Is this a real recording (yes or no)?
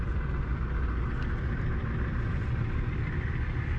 yes